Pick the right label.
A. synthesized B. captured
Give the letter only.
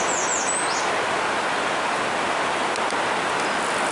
B